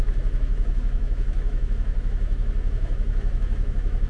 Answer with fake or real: fake